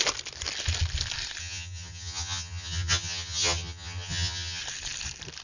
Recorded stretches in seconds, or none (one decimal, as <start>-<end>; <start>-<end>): 0.0-1.4; 4.6-5.4